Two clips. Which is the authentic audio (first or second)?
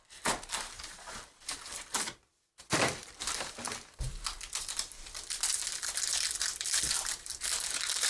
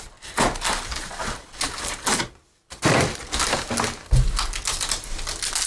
second